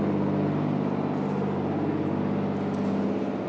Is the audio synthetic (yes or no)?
no